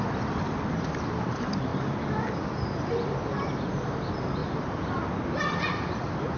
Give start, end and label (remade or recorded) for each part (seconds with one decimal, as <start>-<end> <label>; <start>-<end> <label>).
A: 0.0-1.7 remade; 1.7-2.3 recorded; 2.3-4.4 remade; 4.4-5.4 recorded; 5.4-6.4 remade